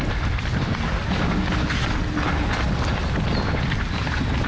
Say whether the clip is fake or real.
real